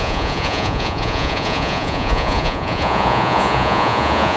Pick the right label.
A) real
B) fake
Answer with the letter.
B